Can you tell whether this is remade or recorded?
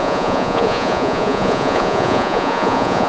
remade